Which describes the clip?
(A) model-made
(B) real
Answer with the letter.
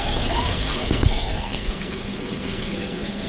A